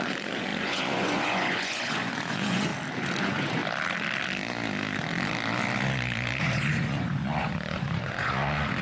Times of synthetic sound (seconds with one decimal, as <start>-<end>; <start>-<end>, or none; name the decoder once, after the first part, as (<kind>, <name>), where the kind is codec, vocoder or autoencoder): 0.0-2.7 (vocoder, Vocos); 3.2-3.6; 6.4-8.8